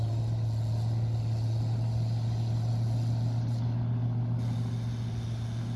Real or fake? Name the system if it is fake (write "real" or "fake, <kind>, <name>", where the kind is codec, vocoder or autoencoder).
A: real